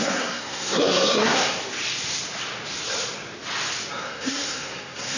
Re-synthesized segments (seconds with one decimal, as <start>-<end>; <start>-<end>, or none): 0.0-1.6; 4.0-5.2